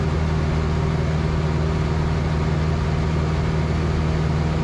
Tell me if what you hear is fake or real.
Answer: real